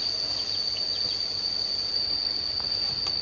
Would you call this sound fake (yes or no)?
no